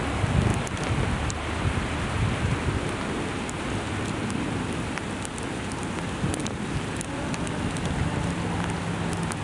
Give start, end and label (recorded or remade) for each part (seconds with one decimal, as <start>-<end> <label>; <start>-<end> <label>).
0.0-9.4 recorded